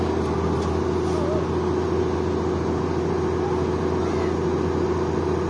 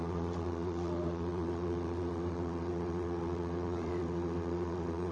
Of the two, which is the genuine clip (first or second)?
first